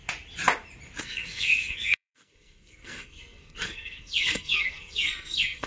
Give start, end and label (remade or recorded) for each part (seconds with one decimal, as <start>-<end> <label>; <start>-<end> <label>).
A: 0.0-1.0 recorded; 1.0-5.7 remade